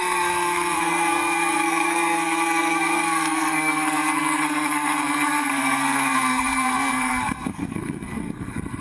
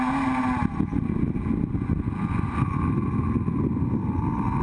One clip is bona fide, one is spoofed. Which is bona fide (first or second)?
second